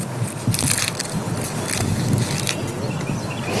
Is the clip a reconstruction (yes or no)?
no